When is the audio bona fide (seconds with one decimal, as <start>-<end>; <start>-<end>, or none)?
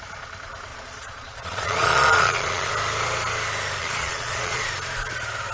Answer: 0.0-0.7; 2.7-3.8; 4.6-5.5